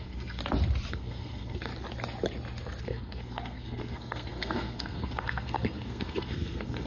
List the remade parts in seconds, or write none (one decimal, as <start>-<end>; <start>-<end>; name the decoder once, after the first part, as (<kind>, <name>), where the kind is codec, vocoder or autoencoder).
0.0-0.4 (codec, SNAC); 0.9-1.7; 2.8-6.9